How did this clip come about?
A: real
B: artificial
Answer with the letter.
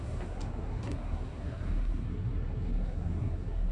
B